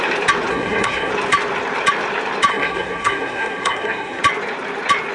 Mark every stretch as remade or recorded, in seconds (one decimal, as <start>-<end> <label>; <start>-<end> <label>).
0.0-0.5 recorded; 0.5-1.1 remade; 1.1-2.5 recorded; 2.5-4.2 remade; 4.2-5.1 recorded